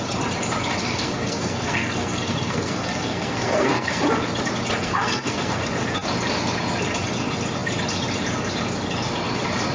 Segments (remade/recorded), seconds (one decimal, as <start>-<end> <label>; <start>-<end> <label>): 0.0-0.8 recorded; 0.8-4.0 remade; 4.0-4.8 recorded; 4.8-5.6 remade; 5.6-9.7 recorded